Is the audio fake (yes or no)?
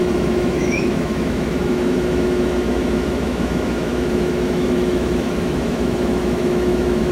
yes